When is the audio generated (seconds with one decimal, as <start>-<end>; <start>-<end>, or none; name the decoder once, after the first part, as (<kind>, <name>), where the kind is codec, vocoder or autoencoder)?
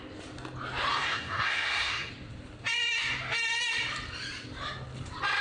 0.9-2.1 (codec, SNAC)